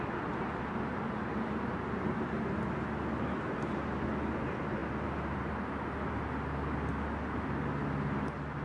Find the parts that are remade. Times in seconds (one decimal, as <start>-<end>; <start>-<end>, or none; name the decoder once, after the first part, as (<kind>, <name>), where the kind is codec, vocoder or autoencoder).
none